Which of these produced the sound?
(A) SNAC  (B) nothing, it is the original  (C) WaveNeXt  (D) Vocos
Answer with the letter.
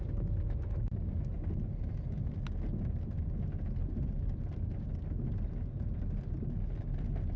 B